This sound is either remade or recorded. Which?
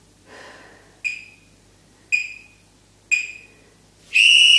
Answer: recorded